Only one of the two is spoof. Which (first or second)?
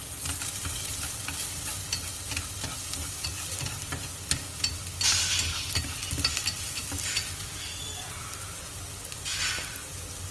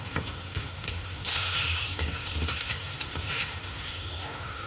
second